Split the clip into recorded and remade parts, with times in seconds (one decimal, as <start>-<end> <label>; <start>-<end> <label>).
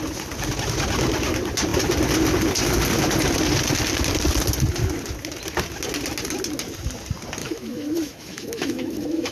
0.0-7.4 recorded; 7.4-9.3 remade